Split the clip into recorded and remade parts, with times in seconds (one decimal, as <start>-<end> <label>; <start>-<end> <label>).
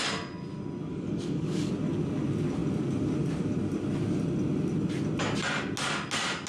0.0-0.9 recorded; 0.9-1.7 remade; 1.7-6.5 recorded